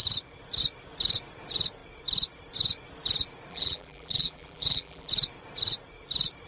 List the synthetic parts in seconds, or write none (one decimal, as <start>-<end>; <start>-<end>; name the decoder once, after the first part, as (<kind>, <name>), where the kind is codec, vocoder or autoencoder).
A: 3.5-5.1 (vocoder, BigVGAN v2)